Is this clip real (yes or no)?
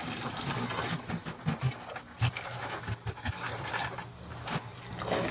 yes